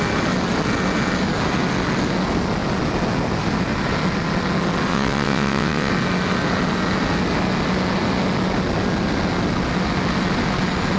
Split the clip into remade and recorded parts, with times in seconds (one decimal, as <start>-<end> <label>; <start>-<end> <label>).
0.0-4.9 recorded; 4.9-5.9 remade; 5.9-11.0 recorded

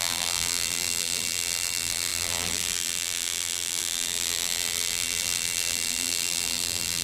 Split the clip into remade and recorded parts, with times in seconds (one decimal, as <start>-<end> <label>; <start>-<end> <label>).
0.0-7.0 remade

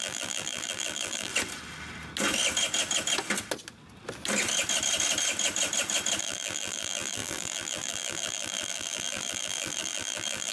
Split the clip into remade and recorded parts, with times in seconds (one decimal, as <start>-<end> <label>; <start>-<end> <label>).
0.0-1.3 remade; 1.3-6.2 recorded; 6.2-10.5 remade

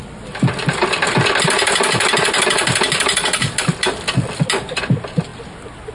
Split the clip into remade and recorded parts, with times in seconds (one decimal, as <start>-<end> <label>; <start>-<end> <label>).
0.0-5.9 recorded

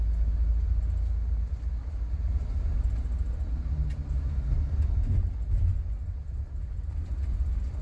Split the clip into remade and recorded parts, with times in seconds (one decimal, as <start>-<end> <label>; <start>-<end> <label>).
0.0-7.8 recorded

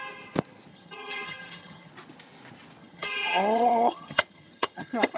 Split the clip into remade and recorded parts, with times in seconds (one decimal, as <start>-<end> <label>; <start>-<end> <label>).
0.0-0.7 recorded; 0.7-1.9 remade; 1.9-2.8 recorded; 2.8-5.2 remade

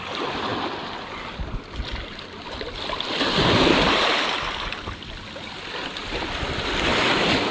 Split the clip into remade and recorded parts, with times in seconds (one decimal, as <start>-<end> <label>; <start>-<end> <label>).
0.0-7.5 recorded